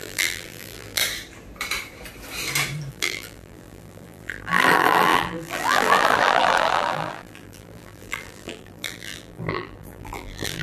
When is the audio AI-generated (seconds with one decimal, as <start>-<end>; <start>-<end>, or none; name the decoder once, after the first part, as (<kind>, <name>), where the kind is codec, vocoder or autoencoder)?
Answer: 0.0-1.0 (vocoder, BigVGAN v2); 2.9-10.6